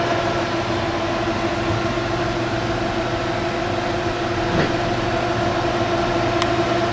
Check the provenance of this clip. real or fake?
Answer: real